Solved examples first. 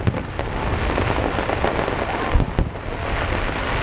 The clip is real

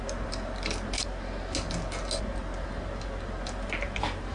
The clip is real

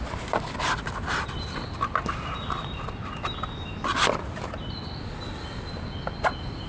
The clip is real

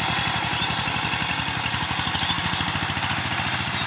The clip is real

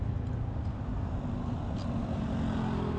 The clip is real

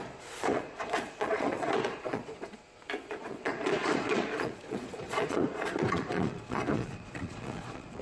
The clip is fake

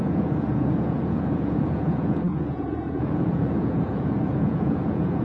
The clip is fake